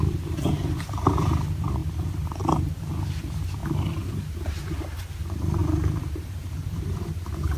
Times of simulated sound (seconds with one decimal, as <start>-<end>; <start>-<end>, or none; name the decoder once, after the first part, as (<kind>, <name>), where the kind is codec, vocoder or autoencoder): 0.0-7.6 (vocoder, BigVGAN v2)